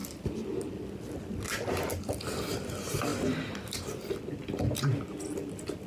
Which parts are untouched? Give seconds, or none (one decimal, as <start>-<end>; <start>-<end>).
0.0-5.9